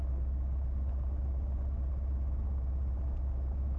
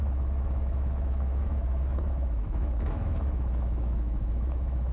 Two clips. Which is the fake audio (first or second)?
second